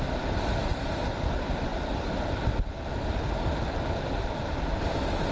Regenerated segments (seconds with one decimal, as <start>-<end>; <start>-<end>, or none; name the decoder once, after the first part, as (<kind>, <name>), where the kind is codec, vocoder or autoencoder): none